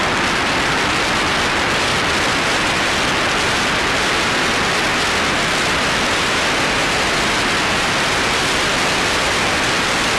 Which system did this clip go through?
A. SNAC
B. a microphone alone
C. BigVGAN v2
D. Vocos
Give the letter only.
B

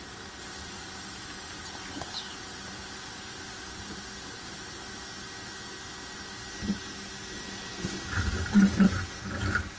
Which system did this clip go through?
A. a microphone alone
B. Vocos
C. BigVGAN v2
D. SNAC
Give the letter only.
A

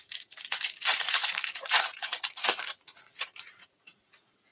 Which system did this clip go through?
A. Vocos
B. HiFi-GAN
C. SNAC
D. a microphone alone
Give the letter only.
A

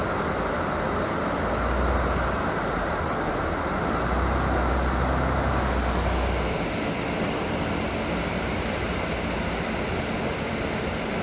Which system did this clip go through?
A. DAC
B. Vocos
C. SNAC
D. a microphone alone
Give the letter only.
D